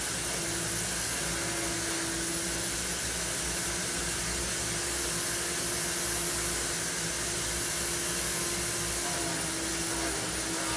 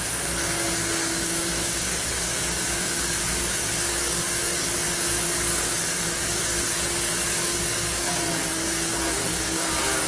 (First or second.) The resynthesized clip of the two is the second